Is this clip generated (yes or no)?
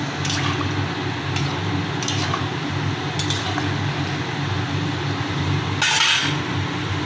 no